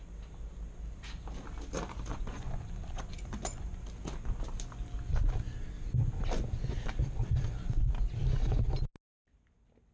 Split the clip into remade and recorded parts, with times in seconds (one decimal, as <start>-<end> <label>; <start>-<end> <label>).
0.0-2.1 recorded; 2.1-3.7 remade; 3.7-9.9 recorded